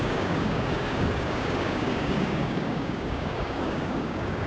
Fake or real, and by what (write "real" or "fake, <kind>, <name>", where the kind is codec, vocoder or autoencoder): fake, codec, DAC